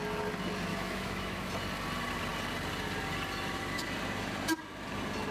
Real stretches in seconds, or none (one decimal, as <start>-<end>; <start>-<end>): 0.0-0.7; 1.5-5.3